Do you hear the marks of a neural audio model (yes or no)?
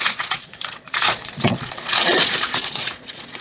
yes